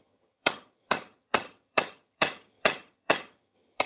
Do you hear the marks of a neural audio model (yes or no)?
yes